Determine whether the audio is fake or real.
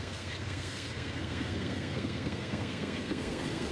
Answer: fake